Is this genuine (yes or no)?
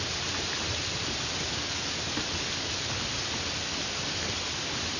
yes